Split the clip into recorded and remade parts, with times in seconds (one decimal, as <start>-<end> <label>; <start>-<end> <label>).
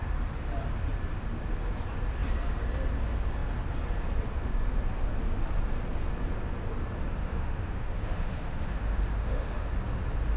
0.0-7.2 recorded; 7.2-9.7 remade; 9.7-10.4 recorded